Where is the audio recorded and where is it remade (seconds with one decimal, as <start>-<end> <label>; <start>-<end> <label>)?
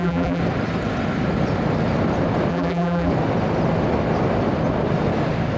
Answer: 0.0-0.4 remade; 0.4-2.5 recorded; 2.5-3.1 remade; 3.1-5.6 recorded